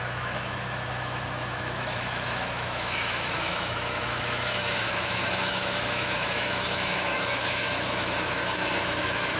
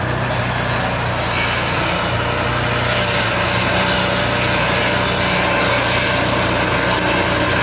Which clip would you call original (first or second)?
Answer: second